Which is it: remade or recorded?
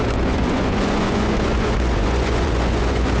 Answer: remade